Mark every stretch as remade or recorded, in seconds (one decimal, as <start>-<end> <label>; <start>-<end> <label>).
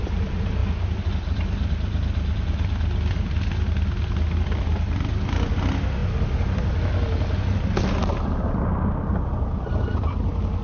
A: 0.0-10.6 recorded